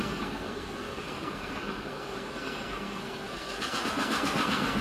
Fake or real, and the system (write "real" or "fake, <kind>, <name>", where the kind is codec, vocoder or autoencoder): fake, codec, SNAC